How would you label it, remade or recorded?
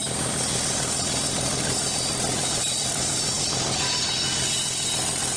recorded